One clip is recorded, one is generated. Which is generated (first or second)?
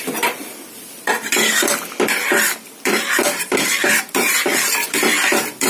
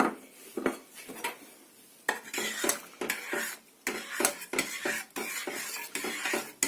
first